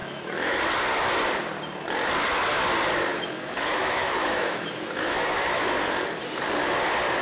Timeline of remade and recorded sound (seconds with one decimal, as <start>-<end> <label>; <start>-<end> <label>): 0.0-0.6 remade; 0.6-3.1 recorded; 3.1-5.6 remade; 5.6-7.2 recorded